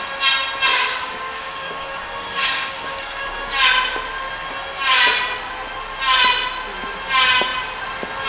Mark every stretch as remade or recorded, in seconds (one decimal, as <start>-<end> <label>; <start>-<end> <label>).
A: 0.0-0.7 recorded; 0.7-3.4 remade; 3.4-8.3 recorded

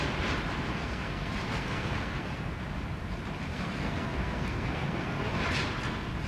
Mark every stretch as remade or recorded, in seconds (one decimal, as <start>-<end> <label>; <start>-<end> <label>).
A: 0.0-0.7 recorded; 0.7-2.6 remade; 2.6-3.5 recorded; 3.5-5.4 remade; 5.4-6.3 recorded

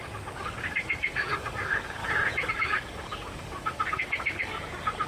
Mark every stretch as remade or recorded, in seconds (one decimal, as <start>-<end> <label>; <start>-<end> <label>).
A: 0.0-2.0 remade; 2.0-2.5 recorded; 2.5-5.1 remade

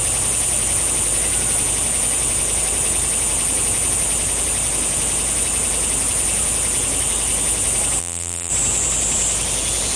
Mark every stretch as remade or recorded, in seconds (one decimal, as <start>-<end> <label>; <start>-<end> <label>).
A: 0.0-8.0 recorded; 8.0-8.5 remade; 8.5-10.0 recorded

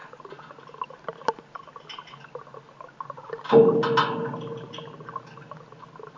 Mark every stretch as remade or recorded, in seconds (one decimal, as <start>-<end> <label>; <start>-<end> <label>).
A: 0.0-6.2 recorded

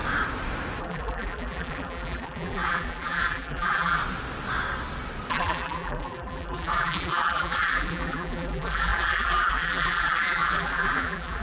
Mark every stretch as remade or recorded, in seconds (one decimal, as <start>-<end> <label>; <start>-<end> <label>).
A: 0.0-0.8 recorded; 0.8-4.0 remade; 4.0-5.3 recorded; 5.3-11.4 remade

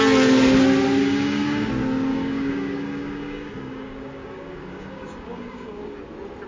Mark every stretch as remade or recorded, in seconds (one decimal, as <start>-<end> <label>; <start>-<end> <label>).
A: 0.0-1.0 recorded; 1.0-1.7 remade; 1.7-2.1 recorded; 2.1-6.0 remade; 6.0-6.5 recorded

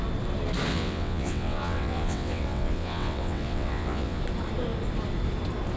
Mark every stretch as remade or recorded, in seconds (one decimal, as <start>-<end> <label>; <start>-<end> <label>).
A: 0.0-0.7 recorded; 0.7-4.2 remade; 4.2-5.8 recorded